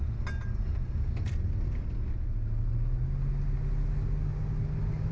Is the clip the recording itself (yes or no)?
yes